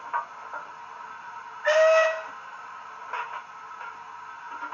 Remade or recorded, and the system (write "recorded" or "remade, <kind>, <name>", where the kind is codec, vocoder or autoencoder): recorded